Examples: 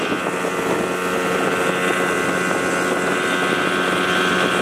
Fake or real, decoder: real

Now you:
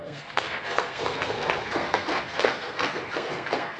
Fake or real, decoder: fake, codec, SNAC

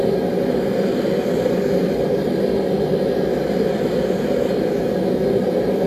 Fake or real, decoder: real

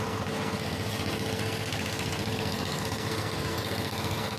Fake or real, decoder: fake, codec, SNAC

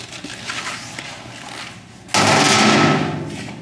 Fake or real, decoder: real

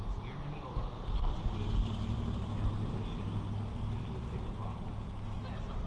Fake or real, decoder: real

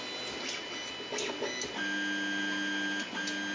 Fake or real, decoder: real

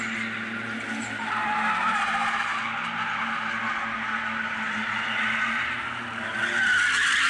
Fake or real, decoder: real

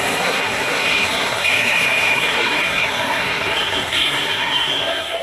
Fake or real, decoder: fake, codec, SNAC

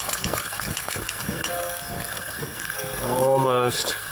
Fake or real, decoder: fake, codec, SNAC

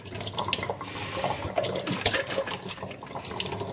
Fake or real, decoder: real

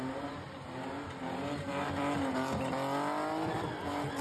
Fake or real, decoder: real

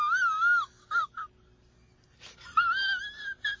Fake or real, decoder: real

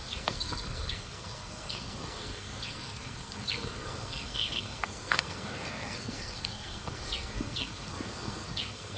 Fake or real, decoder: fake, codec, SNAC